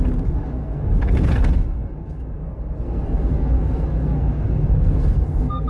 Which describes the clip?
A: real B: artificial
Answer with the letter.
B